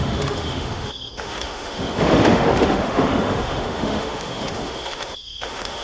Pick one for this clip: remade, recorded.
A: remade